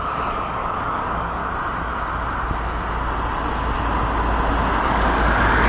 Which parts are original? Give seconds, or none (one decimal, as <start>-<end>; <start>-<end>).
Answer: 1.4-4.8